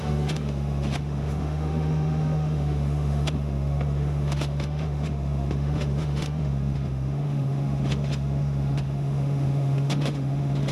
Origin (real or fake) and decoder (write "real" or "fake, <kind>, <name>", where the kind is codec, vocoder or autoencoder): fake, autoencoder, DAC-VAE